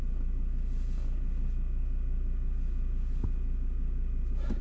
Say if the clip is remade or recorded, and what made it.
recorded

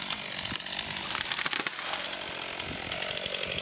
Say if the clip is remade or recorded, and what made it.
recorded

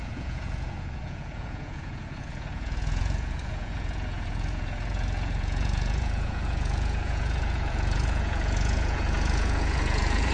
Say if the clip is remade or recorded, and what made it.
remade, vocoder, Vocos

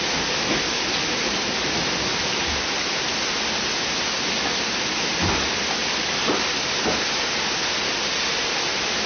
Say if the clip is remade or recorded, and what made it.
recorded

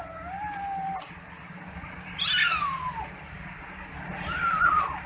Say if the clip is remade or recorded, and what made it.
recorded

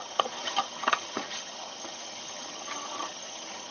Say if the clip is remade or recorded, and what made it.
remade, vocoder, HiFi-GAN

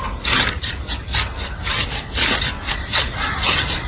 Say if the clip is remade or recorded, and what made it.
recorded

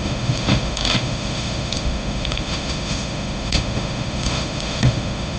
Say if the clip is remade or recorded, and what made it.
remade, autoencoder, DAC-VAE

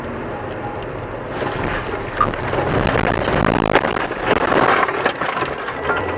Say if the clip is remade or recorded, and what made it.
recorded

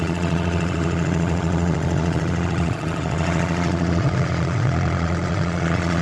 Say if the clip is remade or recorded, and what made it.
remade, vocoder, Vocos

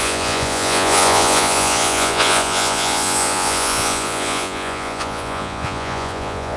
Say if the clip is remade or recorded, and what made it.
remade, vocoder, Vocos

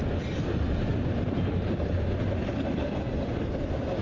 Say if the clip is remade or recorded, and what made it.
recorded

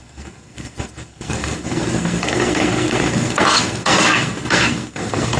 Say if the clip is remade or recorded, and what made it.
remade, codec, SNAC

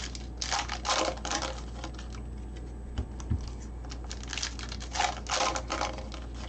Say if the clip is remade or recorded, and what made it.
recorded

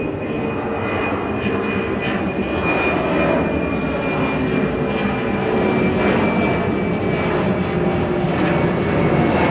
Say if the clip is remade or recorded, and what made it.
recorded